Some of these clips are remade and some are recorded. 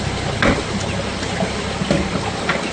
recorded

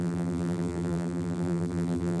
remade